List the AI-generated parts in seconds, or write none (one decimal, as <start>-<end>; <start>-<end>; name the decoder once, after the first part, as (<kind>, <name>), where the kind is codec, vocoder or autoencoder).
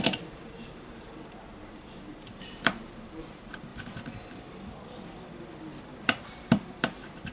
0.0-3.7 (vocoder, BigVGAN v2); 6.0-7.3